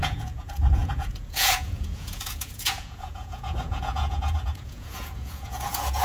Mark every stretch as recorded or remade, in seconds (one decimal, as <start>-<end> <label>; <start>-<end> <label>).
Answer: 0.0-6.0 remade